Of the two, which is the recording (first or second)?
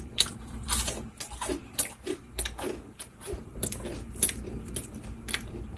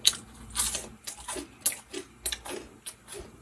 second